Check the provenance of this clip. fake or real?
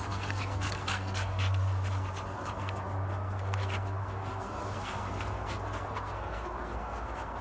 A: fake